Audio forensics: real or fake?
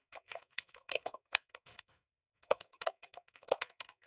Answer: fake